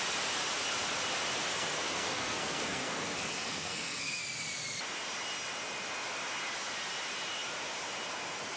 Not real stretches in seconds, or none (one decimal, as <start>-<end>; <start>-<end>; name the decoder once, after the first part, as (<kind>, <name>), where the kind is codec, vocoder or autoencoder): 1.5-4.2 (codec, SNAC)